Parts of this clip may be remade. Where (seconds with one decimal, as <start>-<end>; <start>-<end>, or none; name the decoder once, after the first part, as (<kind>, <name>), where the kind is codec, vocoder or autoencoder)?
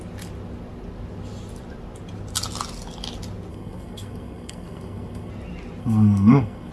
3.5-5.3 (codec, SNAC); 5.8-6.7